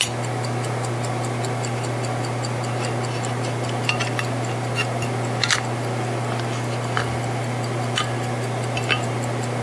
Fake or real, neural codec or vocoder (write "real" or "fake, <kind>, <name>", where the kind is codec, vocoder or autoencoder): real